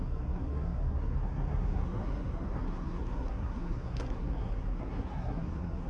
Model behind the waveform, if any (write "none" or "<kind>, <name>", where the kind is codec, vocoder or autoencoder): codec, SNAC